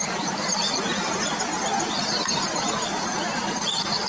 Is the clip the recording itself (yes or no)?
no